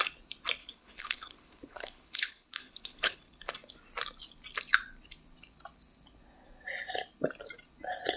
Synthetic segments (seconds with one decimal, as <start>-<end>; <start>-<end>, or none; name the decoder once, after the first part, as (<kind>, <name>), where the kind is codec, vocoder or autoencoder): 0.6-3.2 (codec, HILCodec)